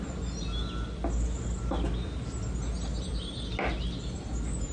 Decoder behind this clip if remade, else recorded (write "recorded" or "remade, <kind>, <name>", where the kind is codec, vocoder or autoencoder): recorded